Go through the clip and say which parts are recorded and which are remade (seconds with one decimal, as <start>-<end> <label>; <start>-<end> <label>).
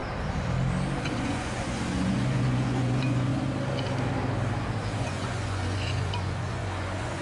0.0-1.0 recorded; 1.0-3.3 remade; 3.3-5.0 recorded; 5.0-7.2 remade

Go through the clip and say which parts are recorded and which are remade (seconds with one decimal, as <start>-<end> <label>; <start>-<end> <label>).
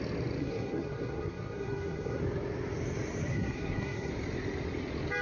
0.0-0.4 recorded; 0.4-2.2 remade; 2.2-3.3 recorded; 3.3-4.1 remade; 4.1-5.2 recorded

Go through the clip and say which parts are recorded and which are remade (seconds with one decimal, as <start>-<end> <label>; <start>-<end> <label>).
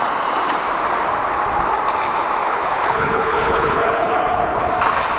0.0-2.4 recorded; 2.4-4.7 remade; 4.7-5.2 recorded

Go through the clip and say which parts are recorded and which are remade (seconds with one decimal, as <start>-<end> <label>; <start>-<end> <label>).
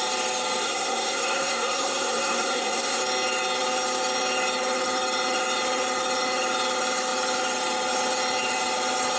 0.0-0.6 recorded; 0.6-3.0 remade; 3.0-9.2 recorded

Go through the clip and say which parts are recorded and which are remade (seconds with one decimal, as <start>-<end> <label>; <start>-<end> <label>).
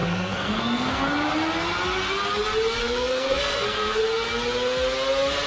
0.0-1.1 remade; 1.1-2.8 recorded; 2.8-4.0 remade; 4.0-5.5 recorded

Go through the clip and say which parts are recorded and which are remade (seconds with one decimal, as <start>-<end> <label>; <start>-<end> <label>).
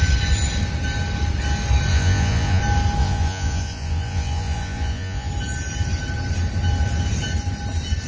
0.0-1.9 recorded; 1.9-2.6 remade; 2.6-3.0 recorded; 3.0-5.3 remade; 5.3-8.1 recorded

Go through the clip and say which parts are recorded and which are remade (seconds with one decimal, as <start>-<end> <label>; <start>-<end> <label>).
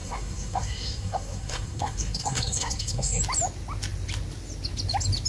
0.0-3.2 remade; 3.2-5.3 recorded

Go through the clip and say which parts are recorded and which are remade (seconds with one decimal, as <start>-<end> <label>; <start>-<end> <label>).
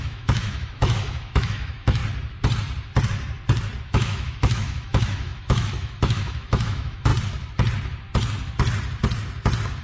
0.0-2.0 remade; 2.0-3.8 recorded; 3.8-7.1 remade; 7.1-9.8 recorded